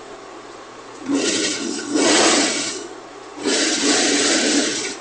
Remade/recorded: remade